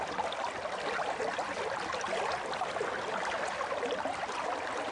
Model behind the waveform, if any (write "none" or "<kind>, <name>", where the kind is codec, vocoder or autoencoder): none